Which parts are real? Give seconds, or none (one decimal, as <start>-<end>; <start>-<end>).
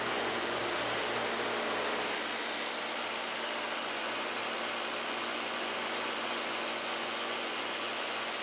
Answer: 0.6-3.8; 4.4-5.1